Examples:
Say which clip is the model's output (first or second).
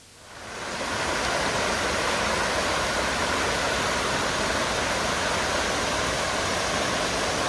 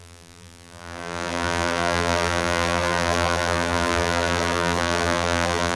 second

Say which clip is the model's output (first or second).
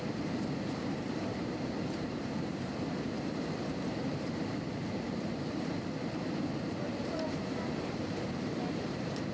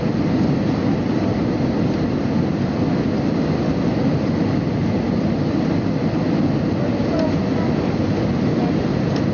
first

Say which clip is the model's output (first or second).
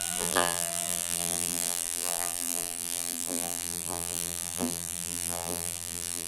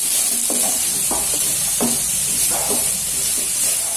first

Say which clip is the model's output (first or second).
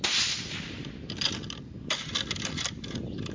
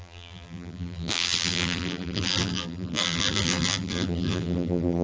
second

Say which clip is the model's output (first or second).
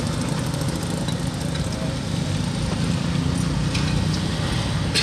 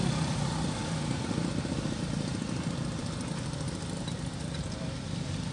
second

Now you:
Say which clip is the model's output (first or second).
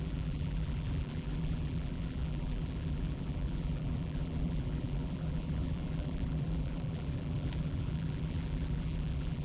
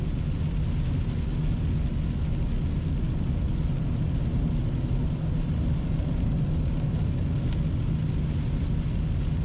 first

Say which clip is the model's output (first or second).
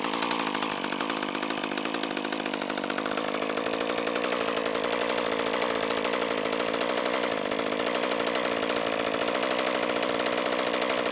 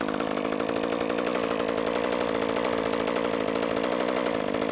first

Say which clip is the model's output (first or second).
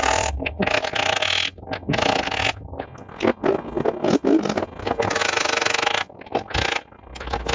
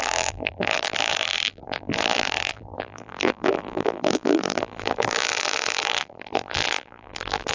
second